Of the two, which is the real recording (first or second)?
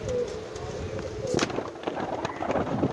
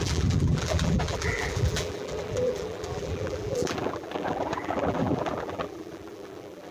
first